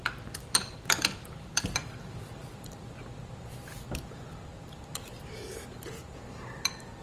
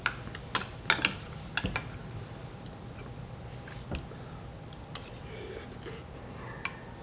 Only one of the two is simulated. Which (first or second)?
first